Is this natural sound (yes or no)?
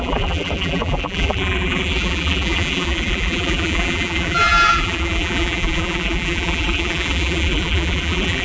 no